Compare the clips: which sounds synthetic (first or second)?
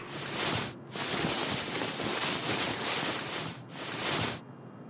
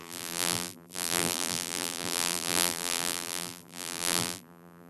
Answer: second